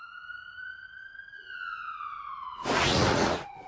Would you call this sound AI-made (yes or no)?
yes